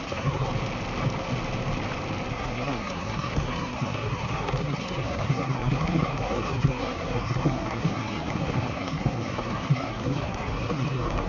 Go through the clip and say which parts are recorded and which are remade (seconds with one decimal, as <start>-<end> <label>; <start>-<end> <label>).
0.0-0.5 remade; 0.5-2.3 recorded; 2.3-11.3 remade